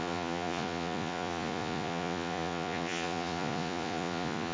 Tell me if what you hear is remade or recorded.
remade